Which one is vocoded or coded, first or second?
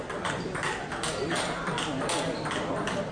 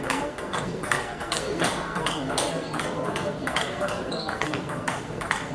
second